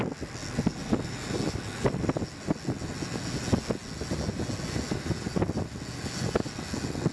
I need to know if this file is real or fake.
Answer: real